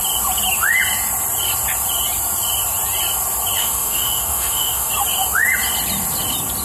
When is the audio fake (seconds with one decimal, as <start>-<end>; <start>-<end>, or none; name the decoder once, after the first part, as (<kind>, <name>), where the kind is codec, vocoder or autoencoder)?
3.6-4.9 (autoencoder, DAC-VAE)